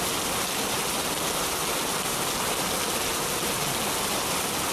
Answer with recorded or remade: recorded